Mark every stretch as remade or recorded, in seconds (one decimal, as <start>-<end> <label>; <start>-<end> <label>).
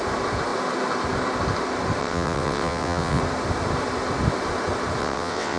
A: 0.0-2.0 recorded; 2.0-3.2 remade; 3.2-5.0 recorded; 5.0-5.6 remade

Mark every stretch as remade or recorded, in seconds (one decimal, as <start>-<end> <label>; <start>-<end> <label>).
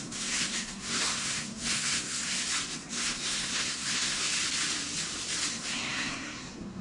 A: 0.0-2.4 remade; 2.4-2.9 recorded; 2.9-4.3 remade; 4.3-5.5 recorded; 5.5-6.8 remade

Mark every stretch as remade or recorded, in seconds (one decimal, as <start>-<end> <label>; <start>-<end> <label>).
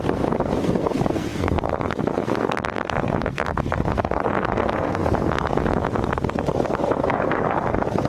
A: 0.0-8.1 remade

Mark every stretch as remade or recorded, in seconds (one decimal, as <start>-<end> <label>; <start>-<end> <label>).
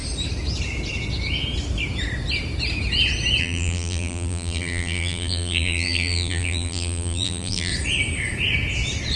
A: 0.0-3.4 recorded; 3.4-7.7 remade; 7.7-9.2 recorded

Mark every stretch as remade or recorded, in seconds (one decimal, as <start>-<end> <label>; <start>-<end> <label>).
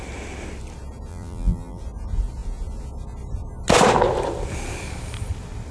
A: 0.0-1.1 recorded; 1.1-1.8 remade; 1.8-5.7 recorded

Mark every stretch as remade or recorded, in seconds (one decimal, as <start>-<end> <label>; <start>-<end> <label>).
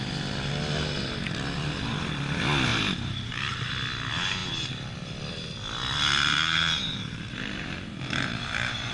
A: 0.0-2.7 recorded; 2.7-3.7 remade; 3.7-6.2 recorded; 6.2-8.9 remade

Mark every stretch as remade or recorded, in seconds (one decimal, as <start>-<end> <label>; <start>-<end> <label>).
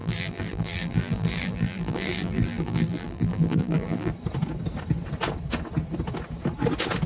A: 0.0-4.1 remade; 4.1-7.1 recorded